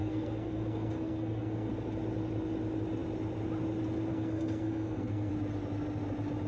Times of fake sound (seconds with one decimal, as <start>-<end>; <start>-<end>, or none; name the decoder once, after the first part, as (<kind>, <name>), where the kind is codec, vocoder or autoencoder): 0.0-1.7 (codec, SNAC); 4.1-5.3